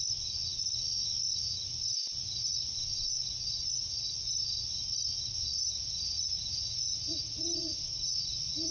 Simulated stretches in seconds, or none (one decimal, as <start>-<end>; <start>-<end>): 2.5-4.1; 5.6-8.7